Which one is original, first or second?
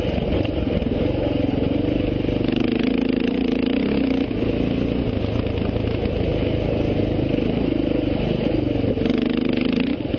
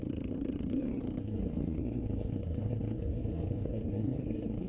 first